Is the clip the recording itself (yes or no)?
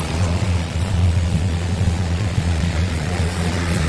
no